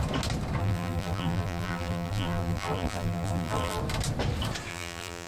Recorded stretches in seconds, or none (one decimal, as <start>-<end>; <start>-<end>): 0.0-0.6; 3.8-4.7